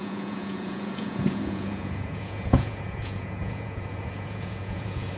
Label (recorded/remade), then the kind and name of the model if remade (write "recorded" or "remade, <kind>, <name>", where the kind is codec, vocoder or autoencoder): remade, vocoder, Vocos